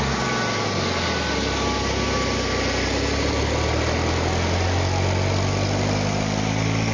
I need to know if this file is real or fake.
real